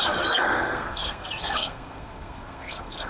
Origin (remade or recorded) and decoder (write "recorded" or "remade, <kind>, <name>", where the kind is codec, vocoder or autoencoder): remade, codec, SNAC